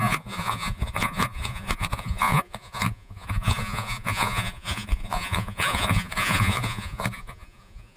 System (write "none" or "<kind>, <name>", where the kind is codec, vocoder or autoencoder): vocoder, Vocos